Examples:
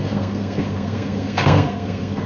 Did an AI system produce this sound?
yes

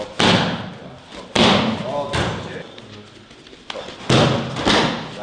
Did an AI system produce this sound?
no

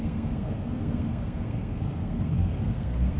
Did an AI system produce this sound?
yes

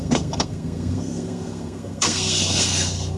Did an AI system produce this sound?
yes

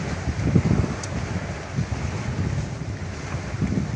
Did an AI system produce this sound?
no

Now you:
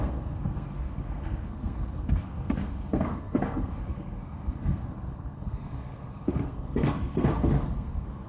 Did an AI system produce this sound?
yes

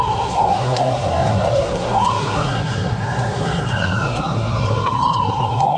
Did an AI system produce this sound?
yes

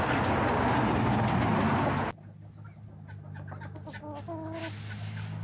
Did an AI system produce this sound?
no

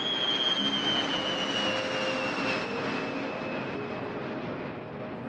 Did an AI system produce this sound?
no